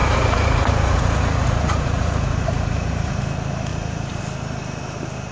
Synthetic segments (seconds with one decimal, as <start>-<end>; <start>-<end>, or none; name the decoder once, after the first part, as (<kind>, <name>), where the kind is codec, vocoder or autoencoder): 0.0-3.2 (vocoder, Vocos); 3.7-4.2